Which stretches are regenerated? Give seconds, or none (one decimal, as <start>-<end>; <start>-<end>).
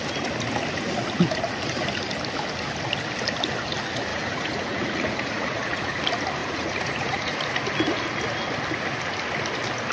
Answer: 4.1-6.0; 6.4-7.4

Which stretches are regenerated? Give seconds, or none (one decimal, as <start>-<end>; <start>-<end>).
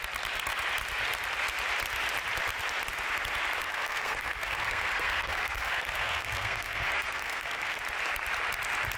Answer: 3.6-7.8